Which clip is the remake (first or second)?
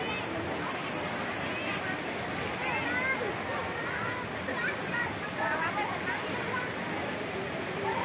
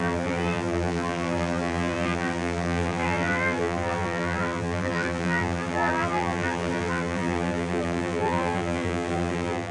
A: second